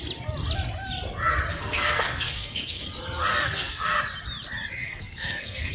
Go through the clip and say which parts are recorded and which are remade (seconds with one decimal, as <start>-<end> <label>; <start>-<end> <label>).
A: 0.0-1.5 recorded; 1.5-2.9 remade; 2.9-3.3 recorded; 3.3-4.0 remade; 4.0-4.8 recorded; 4.8-5.7 remade

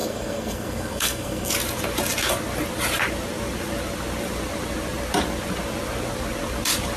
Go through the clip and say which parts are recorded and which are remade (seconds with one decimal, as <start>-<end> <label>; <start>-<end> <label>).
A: 0.0-1.5 remade; 1.5-7.0 recorded

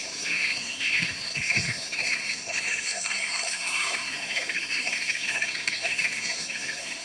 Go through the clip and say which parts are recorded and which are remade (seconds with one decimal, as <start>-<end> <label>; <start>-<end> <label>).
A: 0.0-7.0 remade

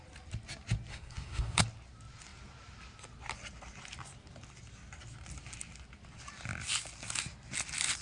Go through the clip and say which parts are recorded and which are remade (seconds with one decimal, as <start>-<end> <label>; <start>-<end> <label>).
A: 0.0-0.9 recorded; 0.9-1.6 remade; 1.6-8.0 recorded